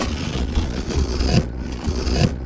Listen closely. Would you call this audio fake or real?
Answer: fake